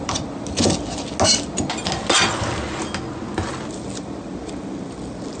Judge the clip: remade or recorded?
recorded